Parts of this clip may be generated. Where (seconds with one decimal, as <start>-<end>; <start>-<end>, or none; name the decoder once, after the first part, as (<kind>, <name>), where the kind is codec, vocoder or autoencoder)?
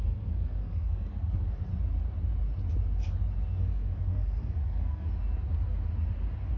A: 0.0-1.7 (codec, SNAC); 3.6-5.1